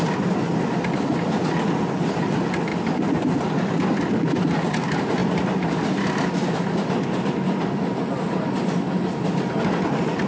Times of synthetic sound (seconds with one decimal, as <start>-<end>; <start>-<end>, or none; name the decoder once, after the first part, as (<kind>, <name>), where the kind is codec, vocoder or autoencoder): none